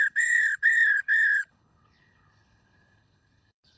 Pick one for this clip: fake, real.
fake